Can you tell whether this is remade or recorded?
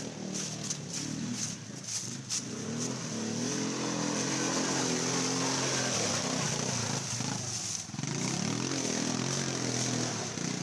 recorded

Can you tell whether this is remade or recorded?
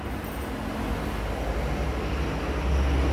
recorded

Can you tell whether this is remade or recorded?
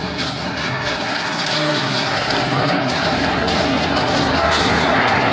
remade